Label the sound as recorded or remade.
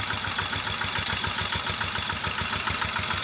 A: recorded